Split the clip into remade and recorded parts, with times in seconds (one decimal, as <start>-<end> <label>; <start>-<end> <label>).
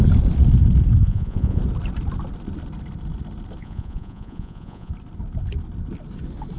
0.0-1.0 recorded; 1.0-1.6 remade; 1.6-3.6 recorded; 3.6-4.9 remade; 4.9-6.6 recorded